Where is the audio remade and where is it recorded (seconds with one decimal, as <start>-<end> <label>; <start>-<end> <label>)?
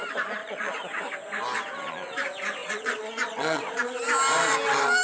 0.0-0.4 recorded; 0.4-1.0 remade; 1.0-2.6 recorded; 2.6-4.0 remade; 4.0-5.0 recorded